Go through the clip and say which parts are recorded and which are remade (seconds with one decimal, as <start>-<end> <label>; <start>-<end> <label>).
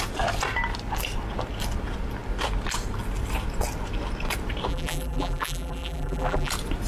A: 0.0-4.7 recorded; 4.7-6.5 remade; 6.5-6.9 recorded